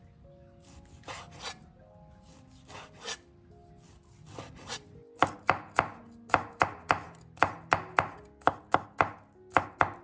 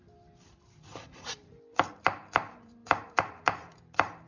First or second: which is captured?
first